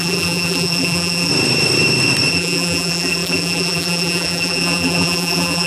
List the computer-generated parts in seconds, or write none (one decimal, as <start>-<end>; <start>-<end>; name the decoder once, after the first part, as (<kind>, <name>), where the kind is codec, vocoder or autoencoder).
0.0-1.3 (vocoder, BigVGAN v2); 2.3-5.7